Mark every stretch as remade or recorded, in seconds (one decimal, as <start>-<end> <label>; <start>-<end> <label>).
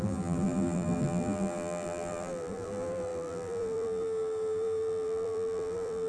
0.0-6.1 remade